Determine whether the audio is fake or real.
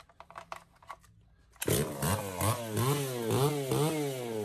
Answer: real